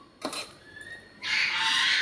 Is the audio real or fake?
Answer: fake